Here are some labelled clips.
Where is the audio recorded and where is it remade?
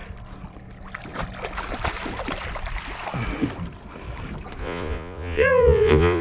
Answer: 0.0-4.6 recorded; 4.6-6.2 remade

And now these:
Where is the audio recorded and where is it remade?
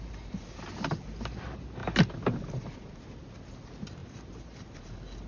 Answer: 0.0-5.3 recorded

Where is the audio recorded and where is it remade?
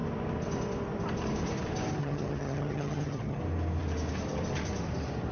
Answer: 0.0-2.0 recorded; 2.0-3.4 remade; 3.4-5.3 recorded